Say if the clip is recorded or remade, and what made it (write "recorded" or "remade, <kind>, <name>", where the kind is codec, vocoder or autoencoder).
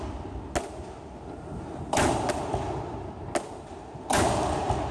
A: recorded